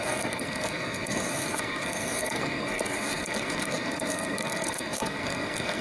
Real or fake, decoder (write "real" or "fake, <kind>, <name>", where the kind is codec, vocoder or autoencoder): fake, codec, SNAC